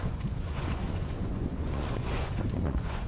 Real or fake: fake